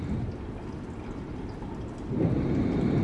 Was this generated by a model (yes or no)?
no